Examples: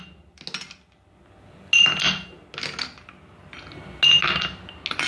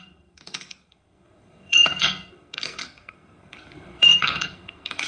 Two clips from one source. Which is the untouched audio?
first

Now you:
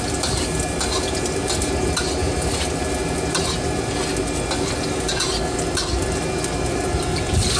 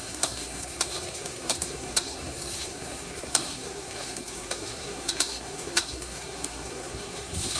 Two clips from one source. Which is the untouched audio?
first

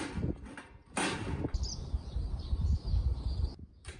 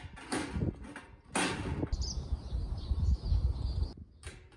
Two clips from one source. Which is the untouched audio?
second